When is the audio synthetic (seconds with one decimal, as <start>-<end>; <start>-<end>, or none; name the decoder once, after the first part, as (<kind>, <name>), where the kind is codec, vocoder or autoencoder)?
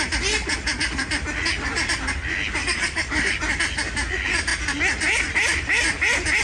2.6-3.3 (codec, DAC)